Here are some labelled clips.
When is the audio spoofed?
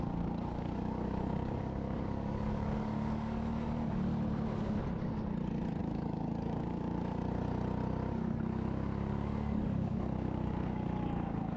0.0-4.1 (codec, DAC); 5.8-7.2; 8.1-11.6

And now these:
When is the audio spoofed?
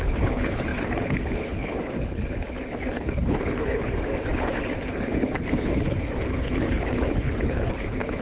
0.0-8.2 (codec, HILCodec)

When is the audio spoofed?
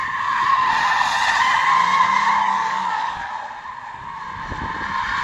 2.4-3.3 (codec, DAC)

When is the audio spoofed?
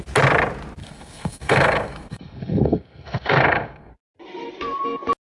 0.8-3.9 (codec, SNAC)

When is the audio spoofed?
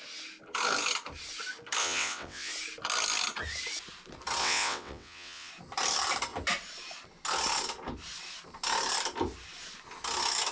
1.8-2.5 (vocoder, WaveNeXt); 4.4-5.5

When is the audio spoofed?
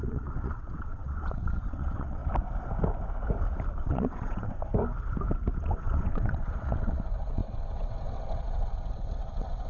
0.0-2.2 (vocoder, WaveNeXt); 3.8-4.7; 5.6-9.7